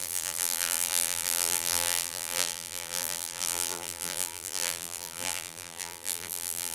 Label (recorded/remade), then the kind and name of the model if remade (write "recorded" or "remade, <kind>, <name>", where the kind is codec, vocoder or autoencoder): remade, vocoder, BigVGAN v2